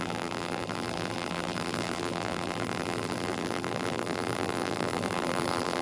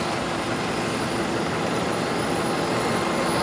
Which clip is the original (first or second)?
second